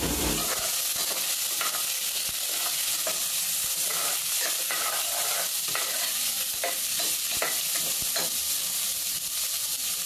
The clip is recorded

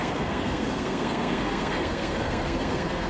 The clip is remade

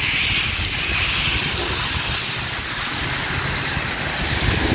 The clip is recorded